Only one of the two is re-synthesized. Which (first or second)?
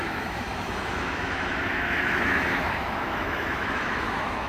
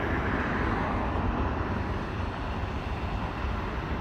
first